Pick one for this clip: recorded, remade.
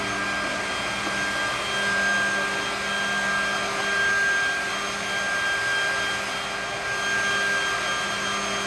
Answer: recorded